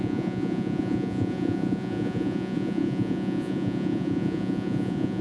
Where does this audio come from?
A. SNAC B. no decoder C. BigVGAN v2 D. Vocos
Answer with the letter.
D